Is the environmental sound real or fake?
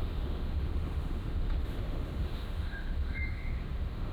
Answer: fake